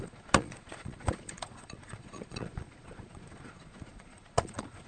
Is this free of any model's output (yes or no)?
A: no